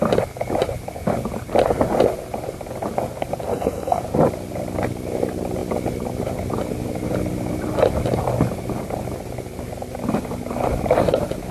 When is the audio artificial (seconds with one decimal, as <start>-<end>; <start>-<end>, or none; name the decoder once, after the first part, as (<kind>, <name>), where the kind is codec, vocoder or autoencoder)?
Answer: 3.5-4.0 (codec, SNAC)